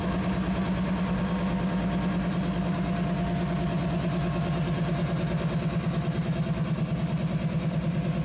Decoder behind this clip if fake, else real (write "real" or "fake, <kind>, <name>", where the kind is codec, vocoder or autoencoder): real